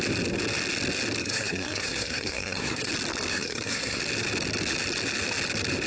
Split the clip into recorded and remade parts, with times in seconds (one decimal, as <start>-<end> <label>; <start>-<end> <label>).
0.0-1.2 recorded; 1.2-2.9 remade; 2.9-3.3 recorded; 3.3-4.0 remade; 4.0-5.9 recorded